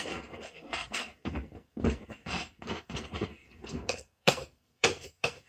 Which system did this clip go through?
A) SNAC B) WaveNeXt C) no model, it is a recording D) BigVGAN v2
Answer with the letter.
A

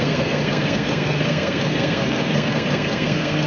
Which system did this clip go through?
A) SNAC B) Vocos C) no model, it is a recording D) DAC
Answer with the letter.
A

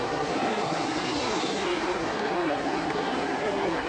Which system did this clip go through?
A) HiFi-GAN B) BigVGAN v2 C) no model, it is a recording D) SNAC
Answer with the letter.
D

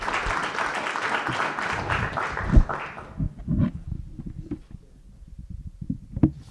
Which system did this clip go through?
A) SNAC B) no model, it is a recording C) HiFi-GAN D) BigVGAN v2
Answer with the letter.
B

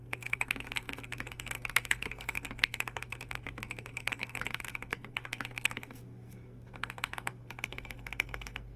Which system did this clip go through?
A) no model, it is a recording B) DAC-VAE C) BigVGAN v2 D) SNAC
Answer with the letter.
D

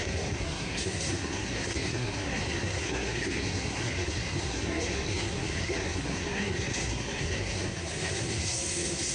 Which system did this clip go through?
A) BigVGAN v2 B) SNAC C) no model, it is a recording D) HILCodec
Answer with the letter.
B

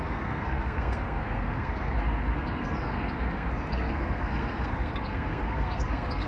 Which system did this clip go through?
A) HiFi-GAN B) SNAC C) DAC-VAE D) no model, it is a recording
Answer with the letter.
B